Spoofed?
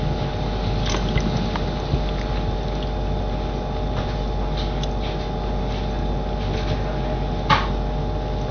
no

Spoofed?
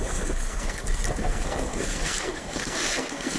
yes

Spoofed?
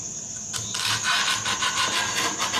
no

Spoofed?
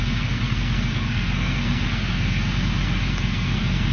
yes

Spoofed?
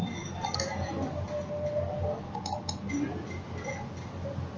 no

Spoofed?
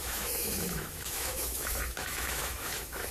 yes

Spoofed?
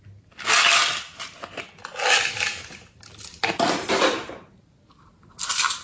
no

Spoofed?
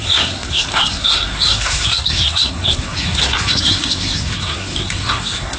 yes